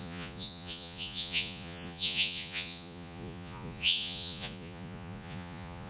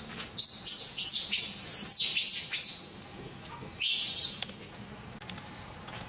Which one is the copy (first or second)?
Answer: first